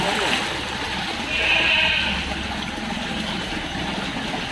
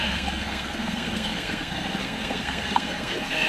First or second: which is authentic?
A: first